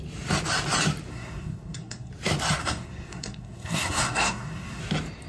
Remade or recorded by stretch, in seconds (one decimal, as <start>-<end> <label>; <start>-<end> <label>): 0.0-1.1 recorded; 1.1-2.1 remade; 2.1-2.6 recorded; 2.6-4.8 remade; 4.8-5.3 recorded